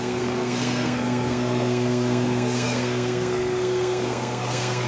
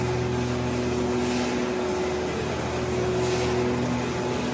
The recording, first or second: second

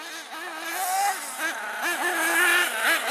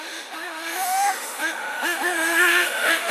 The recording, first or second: first